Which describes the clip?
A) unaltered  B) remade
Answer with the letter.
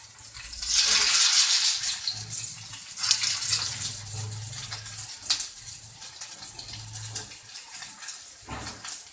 A